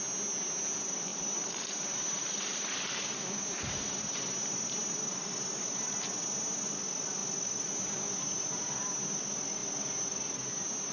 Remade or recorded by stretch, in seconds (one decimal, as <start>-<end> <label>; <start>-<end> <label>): 0.0-10.9 recorded